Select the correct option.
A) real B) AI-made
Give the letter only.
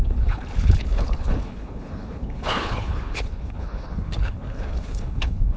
B